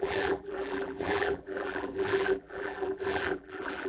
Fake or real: fake